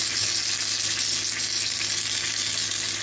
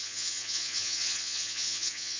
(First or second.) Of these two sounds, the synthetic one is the second